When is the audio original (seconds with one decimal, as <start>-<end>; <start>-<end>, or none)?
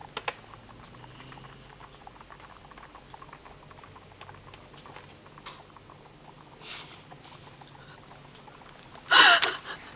0.0-10.0